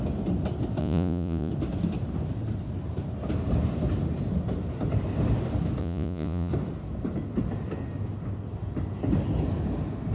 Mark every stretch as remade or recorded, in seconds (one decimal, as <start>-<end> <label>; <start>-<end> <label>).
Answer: 0.0-0.8 recorded; 0.8-1.5 remade; 1.5-5.8 recorded; 5.8-6.5 remade; 6.5-10.1 recorded